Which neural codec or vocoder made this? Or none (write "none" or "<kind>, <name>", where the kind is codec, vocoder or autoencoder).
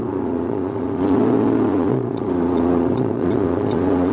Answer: vocoder, Vocos